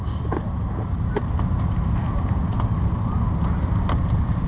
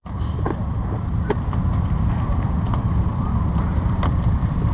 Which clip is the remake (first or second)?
second